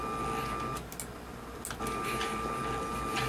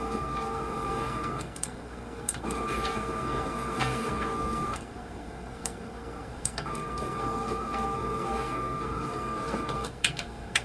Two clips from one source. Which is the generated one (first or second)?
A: second